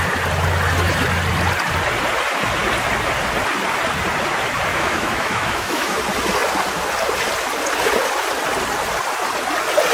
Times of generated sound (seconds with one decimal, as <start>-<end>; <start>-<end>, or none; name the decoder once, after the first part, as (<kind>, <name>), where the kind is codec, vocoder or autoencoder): 4.7-6.0 (autoencoder, DAC-VAE)